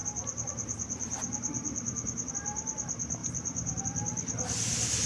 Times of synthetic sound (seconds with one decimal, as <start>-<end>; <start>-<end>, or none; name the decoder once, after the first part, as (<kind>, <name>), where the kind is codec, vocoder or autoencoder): 0.0-2.3 (vocoder, BigVGAN v2); 3.2-3.8